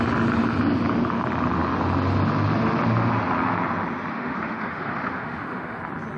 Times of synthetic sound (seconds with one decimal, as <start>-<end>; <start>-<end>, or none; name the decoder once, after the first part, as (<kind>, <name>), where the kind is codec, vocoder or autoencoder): 4.1-5.8 (autoencoder, DAC-VAE)